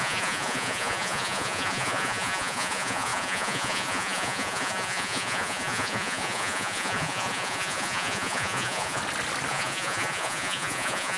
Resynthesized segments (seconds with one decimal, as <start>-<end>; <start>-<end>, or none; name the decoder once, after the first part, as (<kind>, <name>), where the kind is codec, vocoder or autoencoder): 0.0-9.0 (vocoder, Vocos); 9.5-11.2

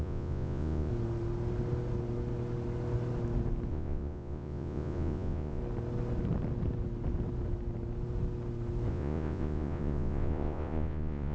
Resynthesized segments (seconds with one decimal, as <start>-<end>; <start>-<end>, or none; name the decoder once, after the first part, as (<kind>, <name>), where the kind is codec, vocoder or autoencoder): 0.0-0.9 (vocoder, Vocos); 3.7-5.6; 8.9-11.3

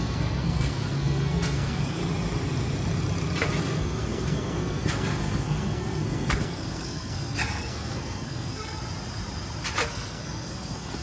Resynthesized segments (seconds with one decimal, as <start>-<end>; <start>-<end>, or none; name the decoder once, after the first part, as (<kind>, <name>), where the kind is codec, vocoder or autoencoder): 0.0-2.0 (codec, SNAC); 3.6-8.8; 9.9-11.0

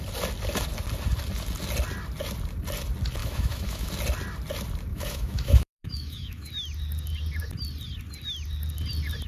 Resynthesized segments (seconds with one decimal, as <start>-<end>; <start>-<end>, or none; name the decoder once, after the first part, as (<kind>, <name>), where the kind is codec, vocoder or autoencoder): 3.2-3.9 (autoencoder, DAC-VAE); 4.9-6.5